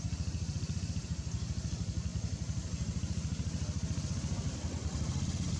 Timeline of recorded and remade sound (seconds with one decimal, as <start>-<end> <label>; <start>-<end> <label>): 0.0-5.6 recorded